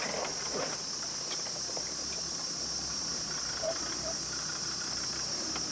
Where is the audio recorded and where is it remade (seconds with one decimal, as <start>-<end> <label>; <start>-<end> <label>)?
0.0-5.7 recorded